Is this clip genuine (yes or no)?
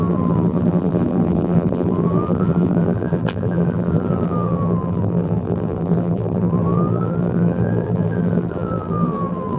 no